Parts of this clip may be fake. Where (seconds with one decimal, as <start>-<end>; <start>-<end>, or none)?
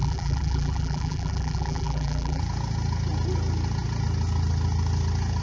0.0-2.4